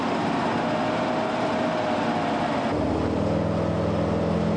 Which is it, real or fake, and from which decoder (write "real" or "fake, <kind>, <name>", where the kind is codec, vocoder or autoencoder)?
real